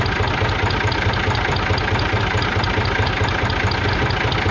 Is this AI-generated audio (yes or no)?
yes